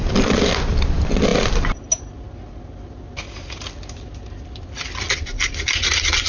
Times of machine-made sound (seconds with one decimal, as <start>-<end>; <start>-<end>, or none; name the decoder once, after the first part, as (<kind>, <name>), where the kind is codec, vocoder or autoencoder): none